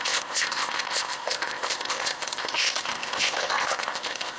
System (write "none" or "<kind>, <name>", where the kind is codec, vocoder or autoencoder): codec, ZipCodec